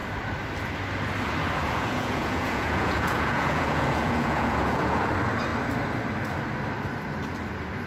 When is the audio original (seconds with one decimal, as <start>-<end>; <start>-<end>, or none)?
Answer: 0.0-1.6; 5.1-7.9